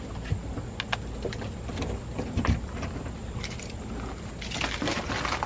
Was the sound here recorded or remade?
recorded